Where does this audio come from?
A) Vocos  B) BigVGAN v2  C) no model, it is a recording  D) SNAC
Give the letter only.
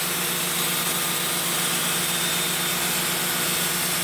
C